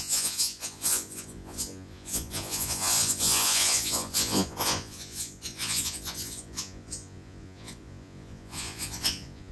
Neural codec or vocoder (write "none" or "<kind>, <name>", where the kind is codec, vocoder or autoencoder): vocoder, Vocos